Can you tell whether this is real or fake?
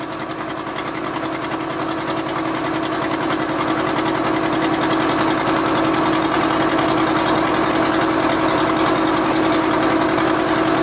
real